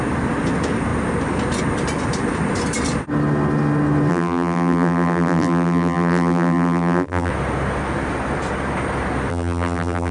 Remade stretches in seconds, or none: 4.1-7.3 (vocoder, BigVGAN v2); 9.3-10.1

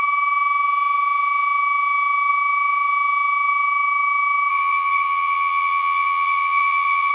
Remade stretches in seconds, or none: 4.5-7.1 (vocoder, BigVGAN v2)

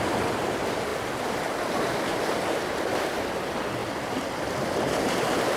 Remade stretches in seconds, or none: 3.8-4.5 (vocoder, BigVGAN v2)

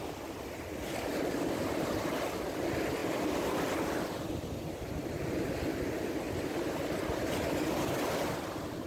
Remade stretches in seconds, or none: 3.0-4.7 (vocoder, BigVGAN v2)

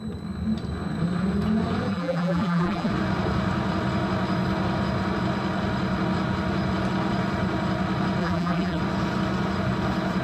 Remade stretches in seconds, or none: 1.9-2.9 (vocoder, BigVGAN v2); 8.2-8.8

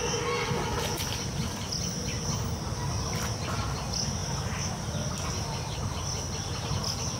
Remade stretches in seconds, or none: none